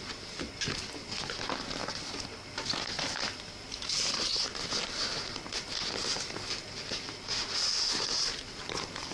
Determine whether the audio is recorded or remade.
recorded